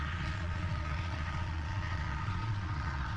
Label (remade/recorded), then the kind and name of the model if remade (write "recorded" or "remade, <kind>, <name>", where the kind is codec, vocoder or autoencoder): remade, vocoder, Vocos